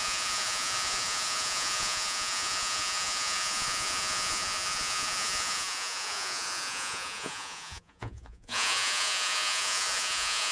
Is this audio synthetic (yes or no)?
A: yes